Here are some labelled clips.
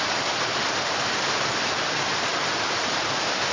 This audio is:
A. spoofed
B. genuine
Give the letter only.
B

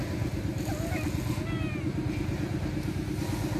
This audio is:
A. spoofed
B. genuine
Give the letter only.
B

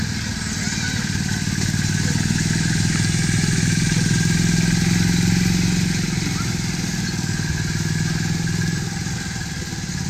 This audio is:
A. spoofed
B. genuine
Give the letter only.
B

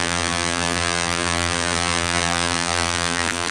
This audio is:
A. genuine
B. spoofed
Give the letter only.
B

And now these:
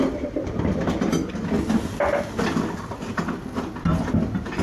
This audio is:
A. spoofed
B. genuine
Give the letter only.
B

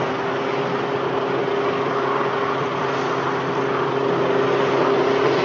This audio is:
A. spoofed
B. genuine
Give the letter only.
B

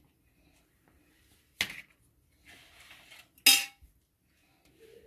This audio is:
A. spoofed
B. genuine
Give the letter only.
B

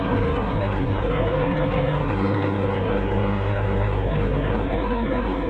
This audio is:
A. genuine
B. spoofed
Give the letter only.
B